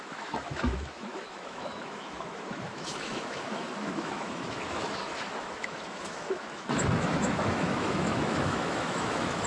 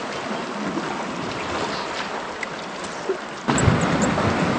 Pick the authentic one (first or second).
second